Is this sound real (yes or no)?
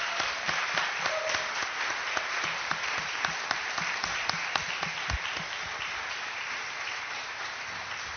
no